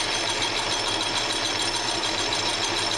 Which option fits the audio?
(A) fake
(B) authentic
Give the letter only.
B